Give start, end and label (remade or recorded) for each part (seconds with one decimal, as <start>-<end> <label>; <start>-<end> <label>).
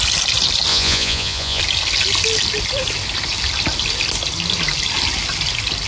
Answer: 0.0-0.7 recorded; 0.7-1.6 remade; 1.6-5.9 recorded